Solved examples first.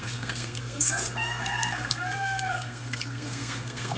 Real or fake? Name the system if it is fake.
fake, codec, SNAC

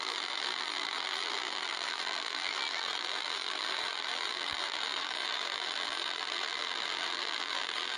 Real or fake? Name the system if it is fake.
fake, vocoder, BigVGAN v2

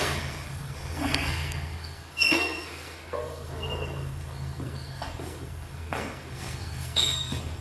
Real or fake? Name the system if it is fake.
fake, codec, SNAC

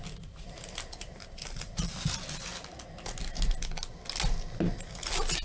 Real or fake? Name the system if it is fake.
real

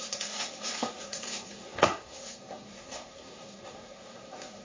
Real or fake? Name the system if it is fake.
fake, codec, SNAC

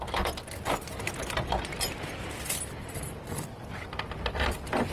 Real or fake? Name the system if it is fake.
real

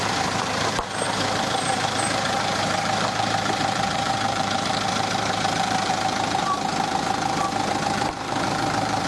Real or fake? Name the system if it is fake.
fake, vocoder, BigVGAN v2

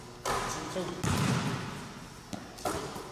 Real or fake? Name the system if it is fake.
real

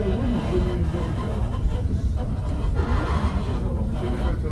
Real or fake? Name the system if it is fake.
real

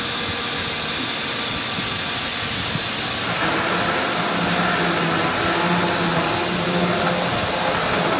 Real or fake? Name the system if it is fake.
real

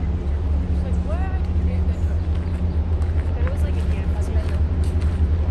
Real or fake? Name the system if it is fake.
real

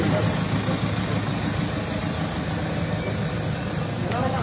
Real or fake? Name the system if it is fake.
real